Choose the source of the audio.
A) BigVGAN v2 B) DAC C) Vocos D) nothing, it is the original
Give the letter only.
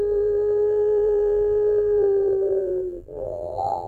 A